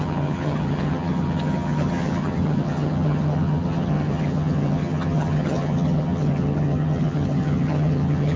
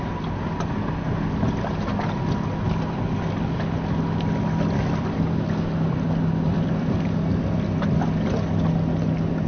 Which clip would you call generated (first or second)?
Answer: first